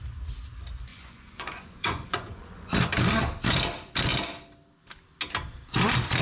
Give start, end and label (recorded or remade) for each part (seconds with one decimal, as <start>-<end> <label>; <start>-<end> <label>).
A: 0.0-0.9 recorded; 0.9-2.7 remade; 2.7-6.2 recorded